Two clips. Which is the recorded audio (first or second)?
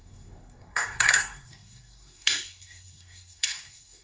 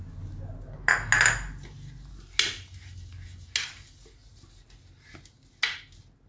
second